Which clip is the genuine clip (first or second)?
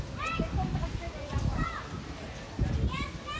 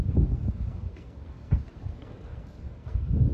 first